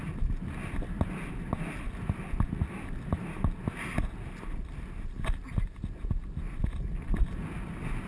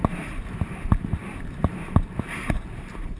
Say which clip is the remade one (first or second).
second